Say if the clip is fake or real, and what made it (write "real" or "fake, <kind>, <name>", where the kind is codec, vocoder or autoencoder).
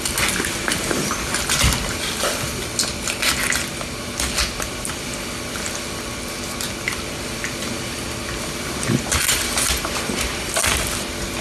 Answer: real